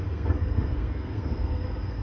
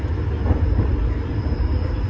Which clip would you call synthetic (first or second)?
first